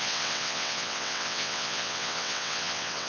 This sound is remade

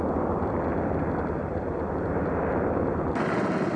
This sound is recorded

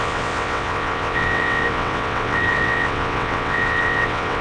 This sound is remade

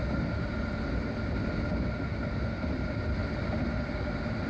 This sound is recorded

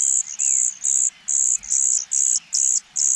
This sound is recorded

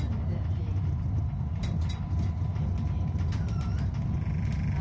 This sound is recorded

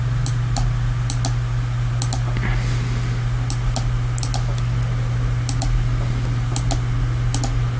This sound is recorded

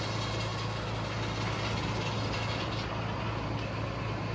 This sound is recorded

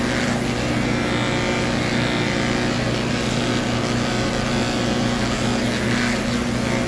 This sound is recorded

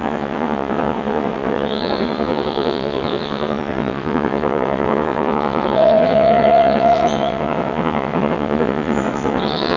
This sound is remade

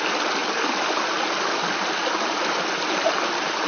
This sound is recorded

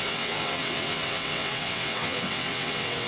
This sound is remade